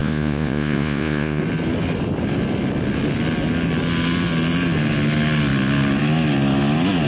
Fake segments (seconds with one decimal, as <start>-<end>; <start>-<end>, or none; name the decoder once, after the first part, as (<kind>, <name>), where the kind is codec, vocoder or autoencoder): 0.0-1.4 (vocoder, Vocos)

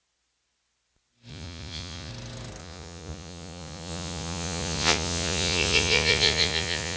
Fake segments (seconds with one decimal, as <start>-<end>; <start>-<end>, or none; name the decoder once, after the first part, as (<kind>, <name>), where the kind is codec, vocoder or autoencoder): 1.3-2.1 (vocoder, Vocos); 2.6-7.0

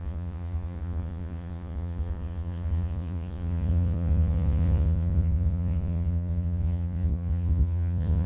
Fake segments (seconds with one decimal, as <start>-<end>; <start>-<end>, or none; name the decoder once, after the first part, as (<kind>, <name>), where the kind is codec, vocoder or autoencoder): 0.0-8.3 (vocoder, Vocos)